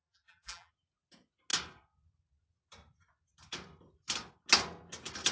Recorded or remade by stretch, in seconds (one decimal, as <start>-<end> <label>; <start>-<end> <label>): 0.0-0.7 remade; 0.7-5.3 recorded